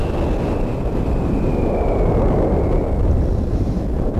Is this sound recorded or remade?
recorded